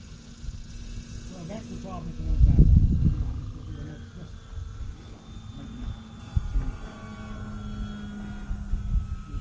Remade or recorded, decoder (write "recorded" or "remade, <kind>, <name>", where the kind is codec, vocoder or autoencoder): recorded